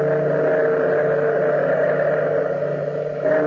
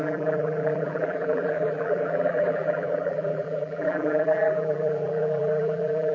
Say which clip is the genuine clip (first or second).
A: first